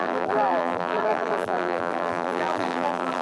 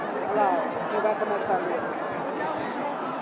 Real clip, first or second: second